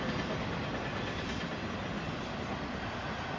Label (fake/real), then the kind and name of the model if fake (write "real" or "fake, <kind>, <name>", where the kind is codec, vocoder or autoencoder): real